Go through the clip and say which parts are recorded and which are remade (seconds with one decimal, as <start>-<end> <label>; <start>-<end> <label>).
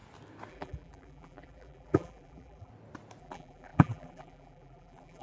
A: 0.0-0.5 recorded; 0.5-2.7 remade; 2.7-3.2 recorded; 3.2-5.2 remade